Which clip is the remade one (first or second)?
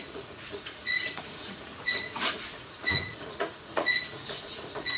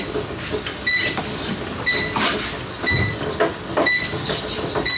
first